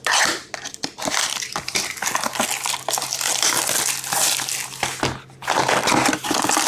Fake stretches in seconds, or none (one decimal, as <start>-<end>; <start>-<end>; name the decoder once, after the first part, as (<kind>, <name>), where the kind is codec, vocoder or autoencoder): none